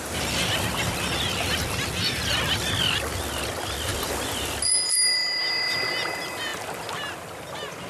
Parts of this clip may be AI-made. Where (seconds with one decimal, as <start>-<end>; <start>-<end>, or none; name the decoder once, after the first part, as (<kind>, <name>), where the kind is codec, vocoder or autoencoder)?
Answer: none